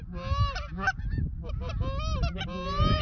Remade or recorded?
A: recorded